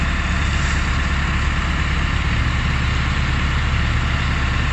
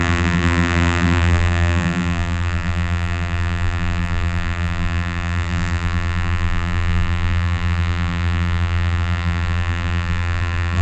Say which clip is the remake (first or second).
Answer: second